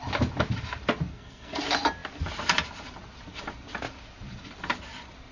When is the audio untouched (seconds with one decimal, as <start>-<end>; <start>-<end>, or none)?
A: 0.0-1.1; 1.6-5.3